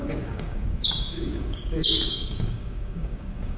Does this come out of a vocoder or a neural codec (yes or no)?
yes